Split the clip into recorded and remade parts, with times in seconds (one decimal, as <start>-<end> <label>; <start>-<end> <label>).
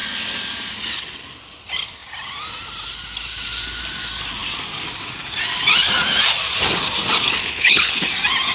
0.0-7.4 recorded; 7.4-8.1 remade; 8.1-8.5 recorded